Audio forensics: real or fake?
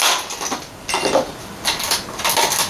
real